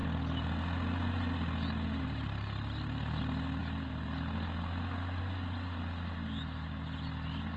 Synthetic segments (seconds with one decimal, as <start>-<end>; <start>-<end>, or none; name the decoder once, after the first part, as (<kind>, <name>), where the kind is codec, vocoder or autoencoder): none